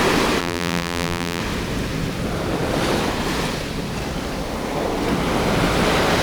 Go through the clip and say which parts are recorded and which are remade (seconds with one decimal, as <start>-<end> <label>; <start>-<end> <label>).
0.0-0.4 recorded; 0.4-1.4 remade; 1.4-6.2 recorded